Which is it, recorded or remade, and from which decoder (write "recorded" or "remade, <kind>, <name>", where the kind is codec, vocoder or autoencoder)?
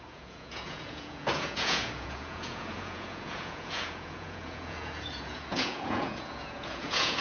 remade, vocoder, Vocos